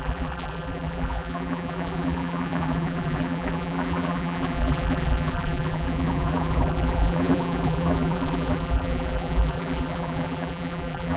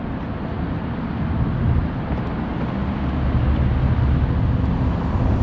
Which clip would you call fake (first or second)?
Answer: first